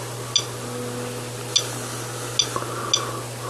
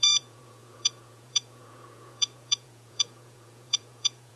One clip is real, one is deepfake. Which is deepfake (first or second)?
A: second